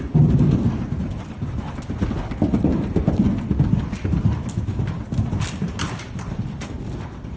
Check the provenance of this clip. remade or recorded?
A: recorded